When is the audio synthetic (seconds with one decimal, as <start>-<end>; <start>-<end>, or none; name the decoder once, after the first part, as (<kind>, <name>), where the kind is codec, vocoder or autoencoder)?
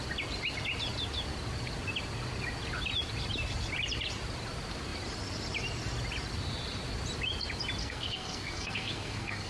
7.8-9.5 (codec, SNAC)